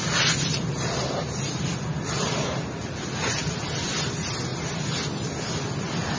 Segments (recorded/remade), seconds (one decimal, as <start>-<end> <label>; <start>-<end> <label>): 0.0-6.2 recorded